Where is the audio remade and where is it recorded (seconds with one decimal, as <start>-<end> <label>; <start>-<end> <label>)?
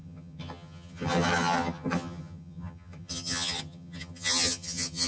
0.0-5.1 remade